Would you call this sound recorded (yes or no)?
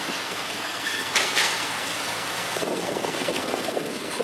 no